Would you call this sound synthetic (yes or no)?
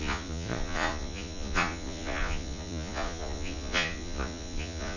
yes